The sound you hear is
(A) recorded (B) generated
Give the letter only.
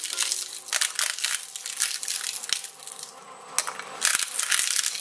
A